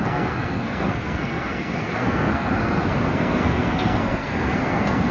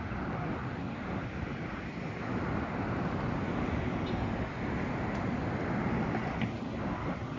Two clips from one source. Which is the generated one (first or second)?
first